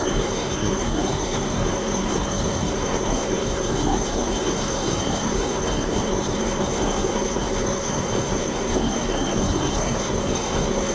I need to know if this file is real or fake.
fake